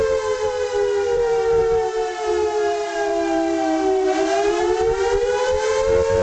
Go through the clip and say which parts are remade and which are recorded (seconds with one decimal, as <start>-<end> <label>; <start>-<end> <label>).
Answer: 0.0-6.2 remade